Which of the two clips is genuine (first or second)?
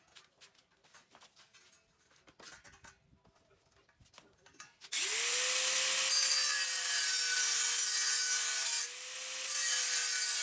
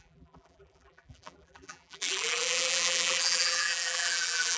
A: first